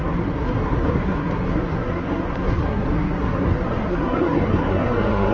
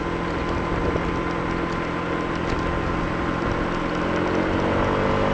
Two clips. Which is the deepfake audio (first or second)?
first